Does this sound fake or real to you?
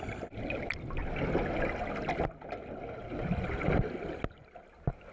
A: real